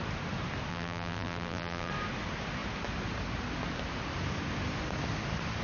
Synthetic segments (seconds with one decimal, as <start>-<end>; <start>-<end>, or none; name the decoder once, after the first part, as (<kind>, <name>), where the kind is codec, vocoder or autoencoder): 0.7-1.9 (vocoder, BigVGAN v2)